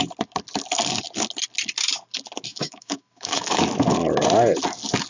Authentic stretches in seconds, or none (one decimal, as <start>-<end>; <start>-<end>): 0.0-2.5; 3.6-5.1